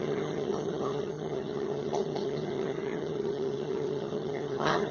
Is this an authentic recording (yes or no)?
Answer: no